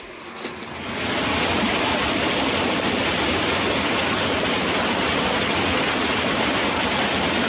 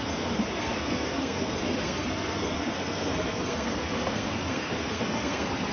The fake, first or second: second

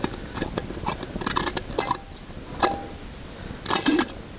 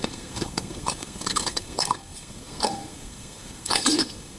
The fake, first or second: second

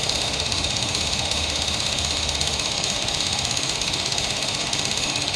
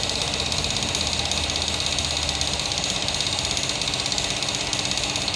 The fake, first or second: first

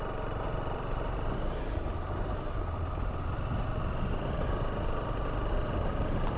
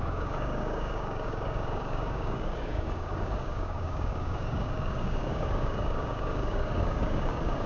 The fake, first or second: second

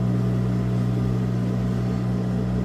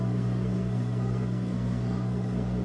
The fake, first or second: second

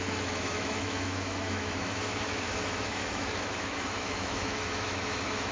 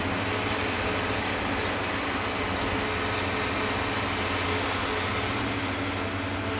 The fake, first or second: first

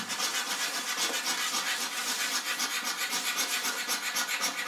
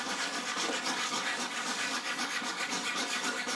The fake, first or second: second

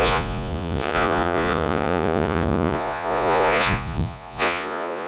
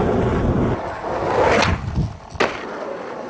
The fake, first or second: first